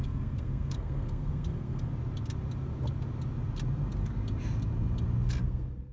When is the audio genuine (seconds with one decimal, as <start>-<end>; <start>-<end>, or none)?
1.9-5.4